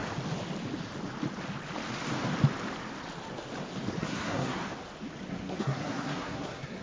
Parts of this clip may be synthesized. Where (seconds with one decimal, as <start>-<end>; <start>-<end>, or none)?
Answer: 4.0-4.6; 5.3-6.8